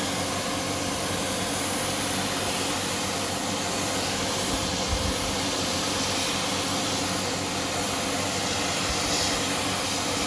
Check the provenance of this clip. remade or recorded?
recorded